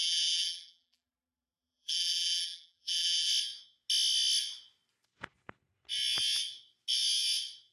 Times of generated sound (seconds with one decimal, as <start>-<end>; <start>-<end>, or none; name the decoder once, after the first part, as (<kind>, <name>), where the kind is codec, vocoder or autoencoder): 0.0-3.3 (vocoder, BigVGAN v2)